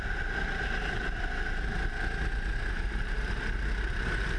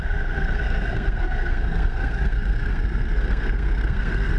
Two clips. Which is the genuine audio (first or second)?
first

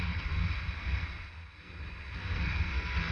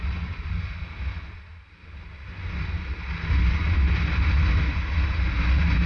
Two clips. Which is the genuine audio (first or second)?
second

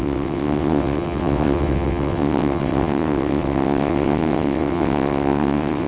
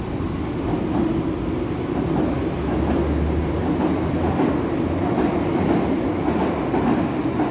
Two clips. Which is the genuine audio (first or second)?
second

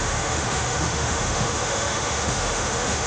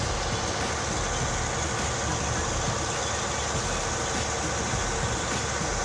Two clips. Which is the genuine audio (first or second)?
second